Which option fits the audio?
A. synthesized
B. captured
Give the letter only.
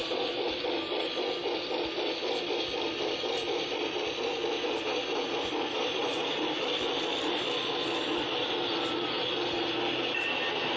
B